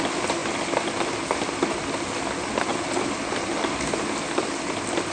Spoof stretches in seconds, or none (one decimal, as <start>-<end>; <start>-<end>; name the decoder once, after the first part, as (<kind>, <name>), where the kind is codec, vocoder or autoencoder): none

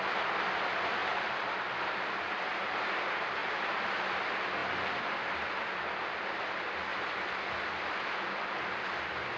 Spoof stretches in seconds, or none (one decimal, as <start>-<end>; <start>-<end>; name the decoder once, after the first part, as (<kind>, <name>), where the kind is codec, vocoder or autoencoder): 3.4-4.1 (vocoder, BigVGAN v2)

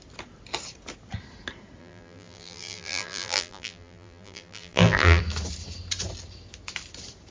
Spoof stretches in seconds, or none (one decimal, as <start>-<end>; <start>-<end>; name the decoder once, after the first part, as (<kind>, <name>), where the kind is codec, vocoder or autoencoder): 1.8-5.2 (vocoder, BigVGAN v2)

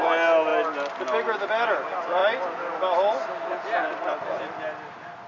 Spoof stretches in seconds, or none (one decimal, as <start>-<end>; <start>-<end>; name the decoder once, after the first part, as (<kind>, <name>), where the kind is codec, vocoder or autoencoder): none